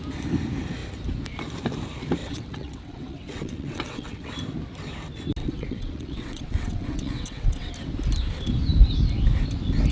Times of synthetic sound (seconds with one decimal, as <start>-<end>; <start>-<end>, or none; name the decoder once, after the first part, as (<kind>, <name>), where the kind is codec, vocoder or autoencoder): 2.2-4.3 (vocoder, WaveNeXt); 5.4-7.7